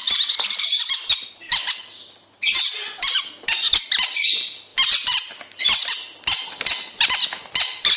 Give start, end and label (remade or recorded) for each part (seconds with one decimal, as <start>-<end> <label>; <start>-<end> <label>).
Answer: 0.0-4.7 recorded; 4.7-5.2 remade; 5.2-8.0 recorded